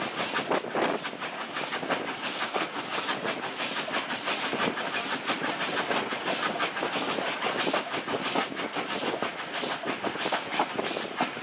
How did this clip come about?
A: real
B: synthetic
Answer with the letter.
A